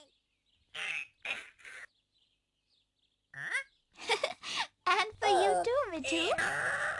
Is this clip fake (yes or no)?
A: no